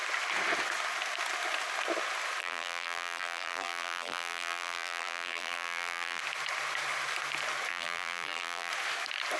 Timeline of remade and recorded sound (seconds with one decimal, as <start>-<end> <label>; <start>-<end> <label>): 0.0-2.4 recorded; 2.4-6.2 remade; 6.2-7.7 recorded; 7.7-8.7 remade; 8.7-9.4 recorded